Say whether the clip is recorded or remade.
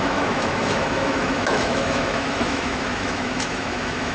remade